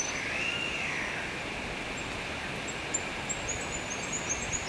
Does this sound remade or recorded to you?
recorded